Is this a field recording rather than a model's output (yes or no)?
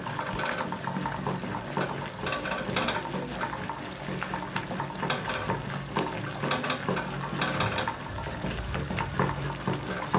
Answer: yes